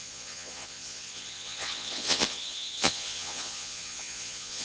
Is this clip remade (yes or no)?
yes